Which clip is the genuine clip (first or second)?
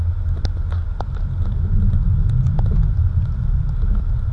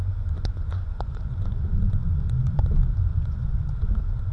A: first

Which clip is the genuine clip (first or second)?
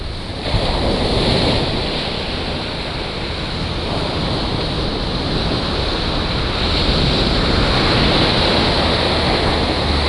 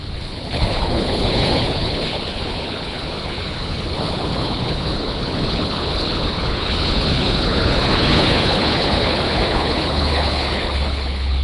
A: first